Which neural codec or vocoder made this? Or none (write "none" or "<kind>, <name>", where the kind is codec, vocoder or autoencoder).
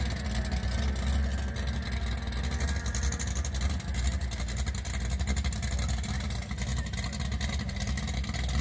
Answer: none